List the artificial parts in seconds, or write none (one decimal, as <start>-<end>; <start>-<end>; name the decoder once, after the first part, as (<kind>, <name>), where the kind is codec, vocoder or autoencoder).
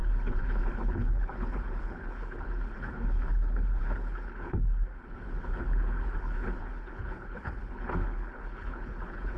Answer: 0.0-9.4 (codec, HILCodec)